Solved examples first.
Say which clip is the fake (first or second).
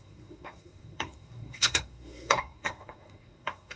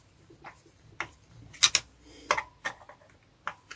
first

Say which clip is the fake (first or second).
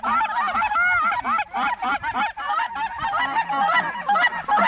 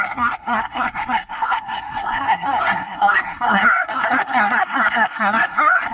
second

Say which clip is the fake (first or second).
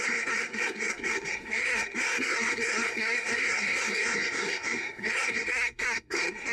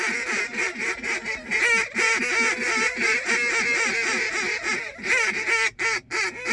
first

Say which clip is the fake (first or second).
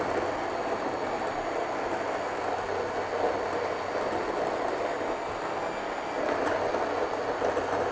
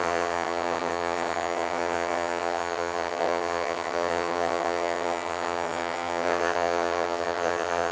second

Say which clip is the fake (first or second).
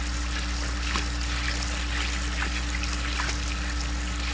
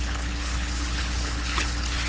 second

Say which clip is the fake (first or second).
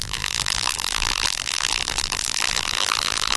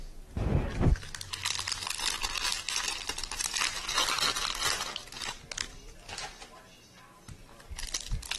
first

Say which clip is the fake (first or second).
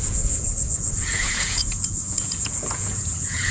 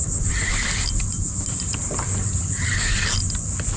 first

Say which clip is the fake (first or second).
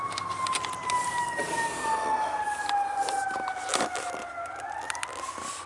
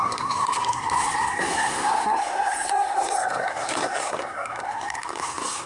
second